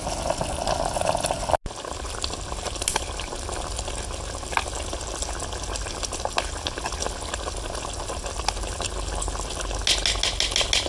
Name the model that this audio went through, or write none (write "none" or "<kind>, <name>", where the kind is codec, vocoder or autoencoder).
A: none